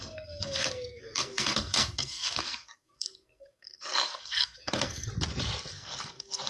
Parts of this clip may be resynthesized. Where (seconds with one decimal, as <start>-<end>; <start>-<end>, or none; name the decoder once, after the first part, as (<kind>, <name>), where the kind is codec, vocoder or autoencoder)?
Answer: 0.0-5.1 (codec, SNAC); 5.7-6.5